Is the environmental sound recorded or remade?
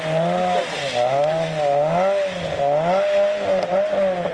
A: recorded